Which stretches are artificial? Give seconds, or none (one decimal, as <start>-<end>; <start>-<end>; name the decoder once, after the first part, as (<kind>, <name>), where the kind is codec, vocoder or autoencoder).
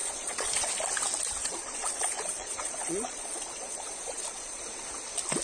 0.0-0.7 (vocoder, Vocos); 1.4-4.6